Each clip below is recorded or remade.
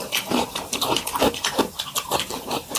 recorded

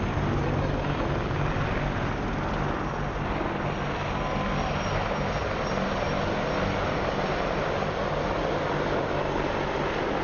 recorded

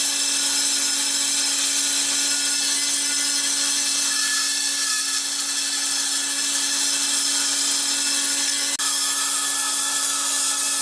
recorded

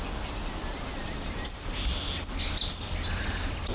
recorded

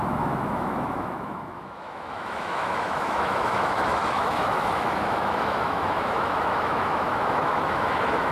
remade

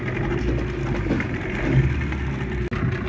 recorded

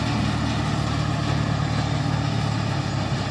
recorded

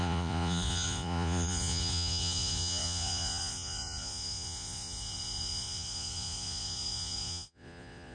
remade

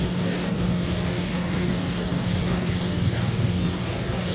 remade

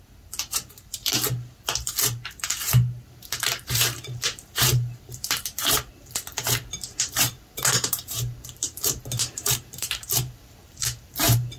remade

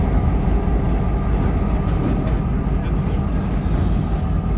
recorded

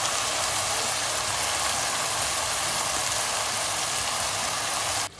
recorded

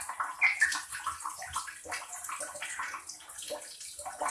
recorded